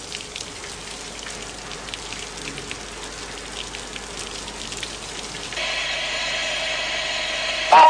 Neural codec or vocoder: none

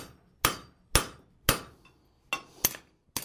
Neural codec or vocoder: none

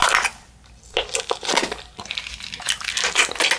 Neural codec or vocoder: none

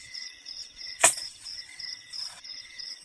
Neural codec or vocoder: vocoder, Vocos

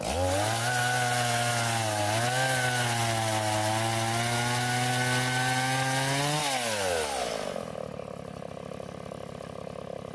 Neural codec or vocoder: none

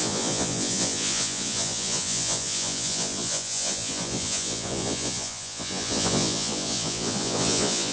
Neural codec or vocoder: vocoder, Vocos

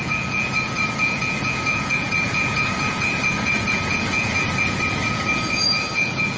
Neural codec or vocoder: vocoder, Vocos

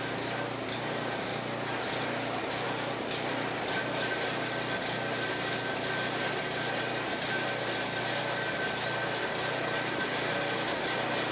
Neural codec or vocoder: none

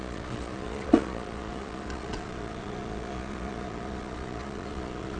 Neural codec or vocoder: vocoder, Vocos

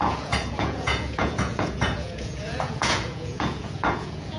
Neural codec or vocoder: vocoder, Vocos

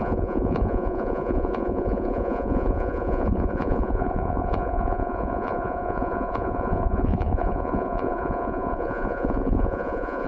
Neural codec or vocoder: vocoder, Vocos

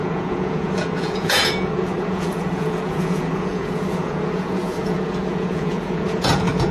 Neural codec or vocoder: vocoder, Vocos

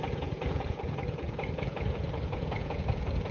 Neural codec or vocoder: vocoder, Vocos